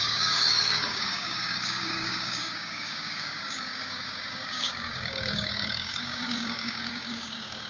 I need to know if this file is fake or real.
fake